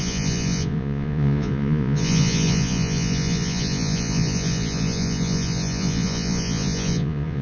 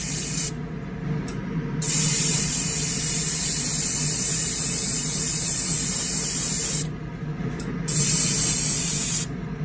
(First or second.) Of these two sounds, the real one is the second